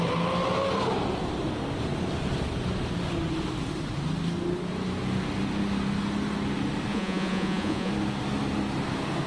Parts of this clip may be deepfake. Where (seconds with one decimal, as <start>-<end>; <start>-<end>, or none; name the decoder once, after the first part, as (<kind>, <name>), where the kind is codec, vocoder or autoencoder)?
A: 6.9-7.9 (vocoder, Vocos)